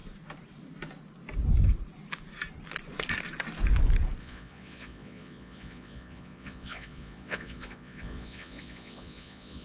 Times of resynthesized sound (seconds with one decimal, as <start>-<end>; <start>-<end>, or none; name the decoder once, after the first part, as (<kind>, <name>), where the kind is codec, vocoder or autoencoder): 4.2-9.6 (vocoder, Vocos)